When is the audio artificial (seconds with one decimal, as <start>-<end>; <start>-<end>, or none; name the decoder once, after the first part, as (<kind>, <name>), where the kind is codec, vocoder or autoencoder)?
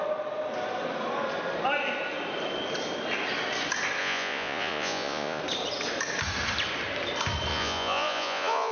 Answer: 4.0-5.4 (vocoder, Vocos); 7.5-8.7